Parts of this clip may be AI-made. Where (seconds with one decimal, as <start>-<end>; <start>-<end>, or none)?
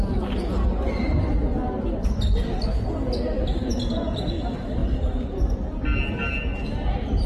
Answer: none